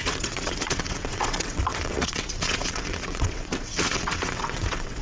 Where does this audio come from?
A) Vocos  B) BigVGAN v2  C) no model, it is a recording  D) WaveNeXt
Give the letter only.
D